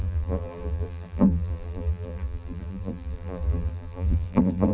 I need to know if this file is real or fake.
fake